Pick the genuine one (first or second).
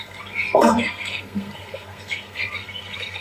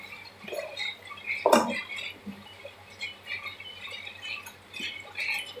second